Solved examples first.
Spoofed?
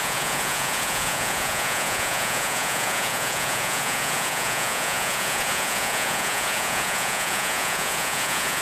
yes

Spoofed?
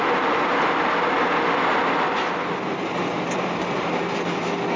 no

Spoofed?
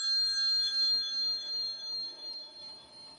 yes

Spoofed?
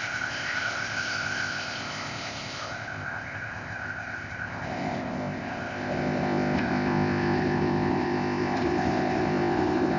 yes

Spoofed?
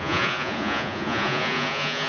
yes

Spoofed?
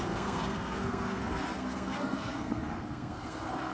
yes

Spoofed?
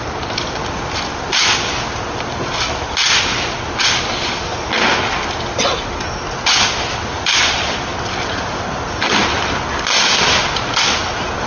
no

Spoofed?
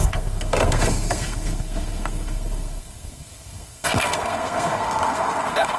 yes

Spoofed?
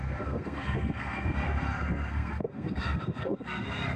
yes